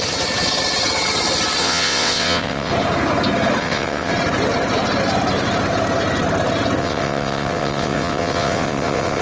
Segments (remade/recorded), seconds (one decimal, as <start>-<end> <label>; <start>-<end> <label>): 0.0-1.6 recorded; 1.6-2.7 remade; 2.7-3.6 recorded; 3.6-4.1 remade; 4.1-6.8 recorded; 6.8-9.2 remade